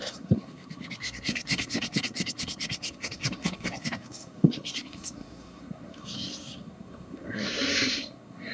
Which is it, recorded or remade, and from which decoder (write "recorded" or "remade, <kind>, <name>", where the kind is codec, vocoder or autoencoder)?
remade, codec, SNAC